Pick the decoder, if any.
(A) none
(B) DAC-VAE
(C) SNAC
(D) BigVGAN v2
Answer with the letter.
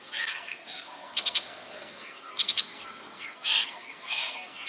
C